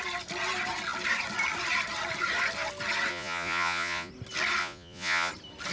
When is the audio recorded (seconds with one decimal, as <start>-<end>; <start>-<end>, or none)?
0.0-3.1; 4.1-4.6; 5.3-5.7